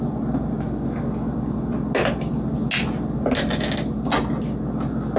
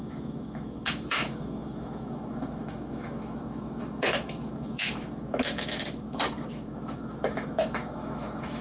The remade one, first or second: second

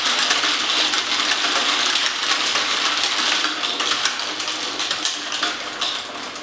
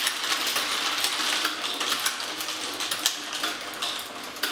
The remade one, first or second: first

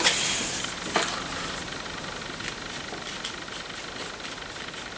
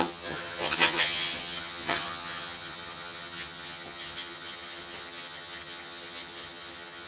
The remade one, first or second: second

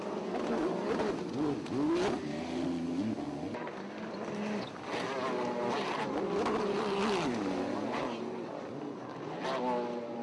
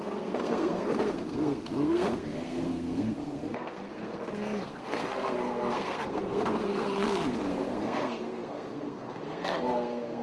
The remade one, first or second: second